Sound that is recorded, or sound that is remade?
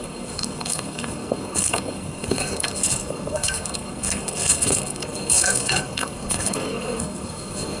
remade